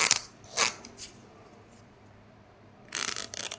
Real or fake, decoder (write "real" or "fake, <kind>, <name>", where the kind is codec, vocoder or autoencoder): real